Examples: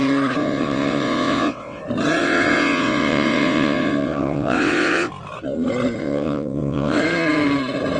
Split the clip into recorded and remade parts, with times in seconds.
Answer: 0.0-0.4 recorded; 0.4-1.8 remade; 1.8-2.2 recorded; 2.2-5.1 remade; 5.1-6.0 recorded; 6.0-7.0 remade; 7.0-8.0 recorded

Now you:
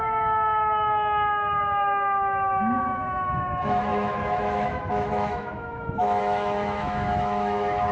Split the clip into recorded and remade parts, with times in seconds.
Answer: 0.0-7.9 remade